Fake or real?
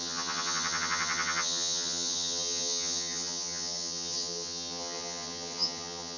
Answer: fake